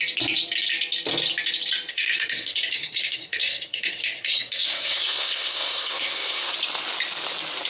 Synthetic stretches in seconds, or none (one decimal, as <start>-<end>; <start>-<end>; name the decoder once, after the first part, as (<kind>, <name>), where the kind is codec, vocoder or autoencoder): 1.9-6.5 (codec, SNAC)